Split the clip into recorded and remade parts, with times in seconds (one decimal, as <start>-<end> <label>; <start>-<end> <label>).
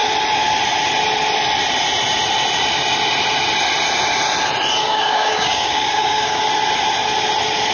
0.0-4.8 recorded; 4.8-6.4 remade; 6.4-7.7 recorded